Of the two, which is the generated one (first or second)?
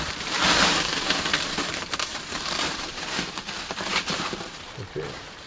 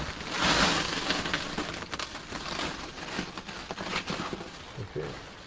first